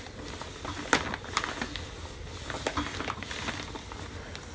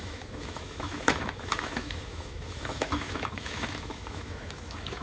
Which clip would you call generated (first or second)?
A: second